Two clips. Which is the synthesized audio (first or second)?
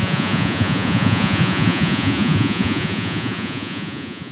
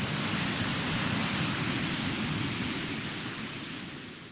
first